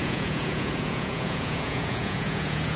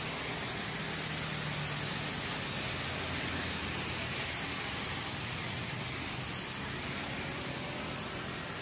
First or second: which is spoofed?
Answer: first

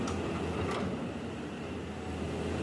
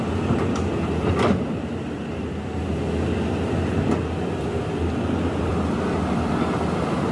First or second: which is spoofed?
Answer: second